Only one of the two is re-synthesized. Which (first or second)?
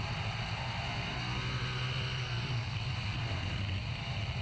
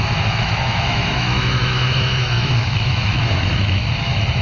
second